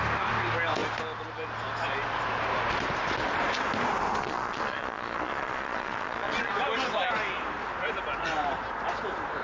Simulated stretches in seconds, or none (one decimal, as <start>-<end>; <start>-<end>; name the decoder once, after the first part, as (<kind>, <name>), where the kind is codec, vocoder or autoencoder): 4.2-6.5 (vocoder, Vocos)